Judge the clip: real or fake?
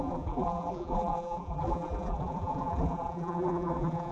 fake